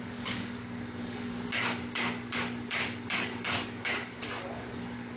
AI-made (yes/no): yes